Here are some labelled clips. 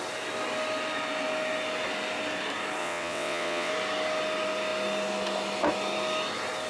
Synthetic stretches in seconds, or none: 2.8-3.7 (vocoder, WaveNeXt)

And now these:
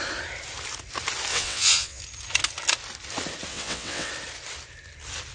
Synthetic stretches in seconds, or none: 1.3-2.0 (vocoder, WaveNeXt); 3.5-4.1

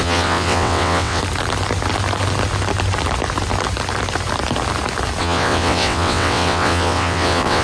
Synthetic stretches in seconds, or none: 0.0-1.2 (vocoder, WaveNeXt); 5.2-7.6

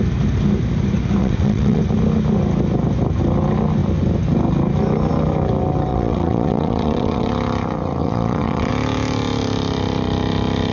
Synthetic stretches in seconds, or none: 1.2-1.8 (vocoder, WaveNeXt); 5.9-7.3; 8.0-8.7

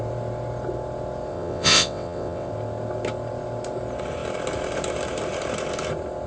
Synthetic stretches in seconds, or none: 1.3-2.5 (vocoder, WaveNeXt)